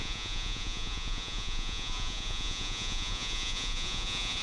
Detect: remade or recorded remade